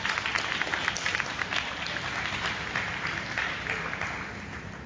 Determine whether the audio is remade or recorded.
recorded